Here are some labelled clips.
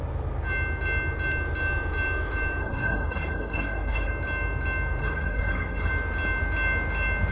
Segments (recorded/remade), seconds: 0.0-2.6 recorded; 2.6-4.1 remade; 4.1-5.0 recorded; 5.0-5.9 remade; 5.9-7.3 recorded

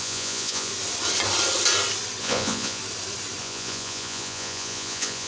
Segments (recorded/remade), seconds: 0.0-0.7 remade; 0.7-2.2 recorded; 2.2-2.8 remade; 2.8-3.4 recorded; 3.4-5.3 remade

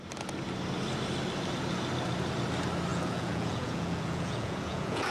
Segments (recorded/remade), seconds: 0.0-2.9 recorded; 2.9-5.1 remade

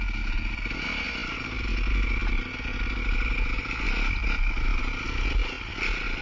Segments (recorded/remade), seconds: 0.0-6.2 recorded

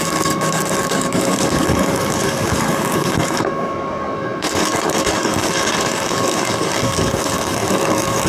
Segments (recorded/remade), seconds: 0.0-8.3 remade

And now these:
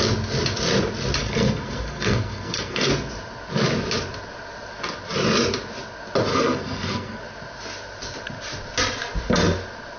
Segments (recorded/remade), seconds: 0.0-1.2 recorded; 1.2-2.9 remade; 2.9-6.3 recorded; 6.3-7.2 remade; 7.2-10.0 recorded

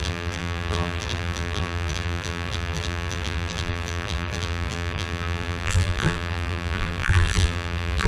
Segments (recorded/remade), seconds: 0.0-8.1 remade

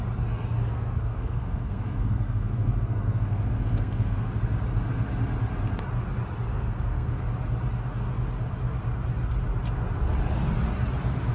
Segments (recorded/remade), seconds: 0.0-0.7 recorded; 0.7-4.4 remade; 4.4-6.5 recorded; 6.5-7.2 remade; 7.2-11.3 recorded